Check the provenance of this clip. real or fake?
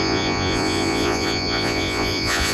fake